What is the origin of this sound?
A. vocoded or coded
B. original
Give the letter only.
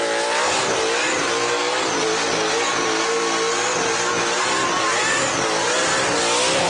B